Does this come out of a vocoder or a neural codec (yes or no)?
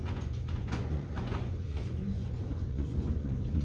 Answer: yes